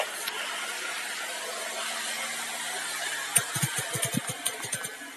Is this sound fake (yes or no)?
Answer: no